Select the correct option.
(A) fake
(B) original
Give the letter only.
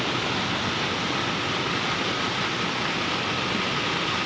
B